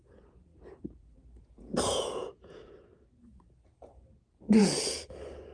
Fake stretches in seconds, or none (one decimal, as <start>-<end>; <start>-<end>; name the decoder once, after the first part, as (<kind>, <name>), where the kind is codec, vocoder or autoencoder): 0.5-3.4 (vocoder, Vocos); 4.6-5.1